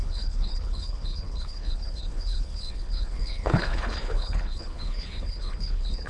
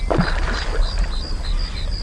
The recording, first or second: second